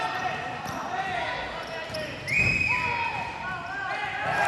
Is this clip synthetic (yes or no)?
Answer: no